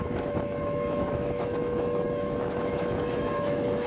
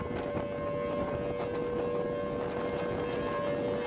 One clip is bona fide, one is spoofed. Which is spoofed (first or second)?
first